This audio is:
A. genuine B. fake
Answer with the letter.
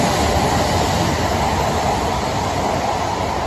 A